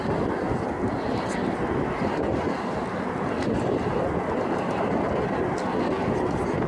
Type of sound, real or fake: real